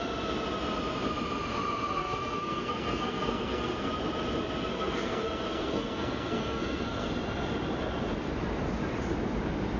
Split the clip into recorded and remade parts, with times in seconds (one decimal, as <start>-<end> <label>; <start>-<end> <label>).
0.0-2.0 recorded; 2.0-3.9 remade; 3.9-4.7 recorded; 4.7-7.1 remade; 7.1-9.8 recorded